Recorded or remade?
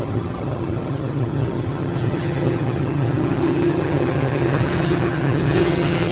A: remade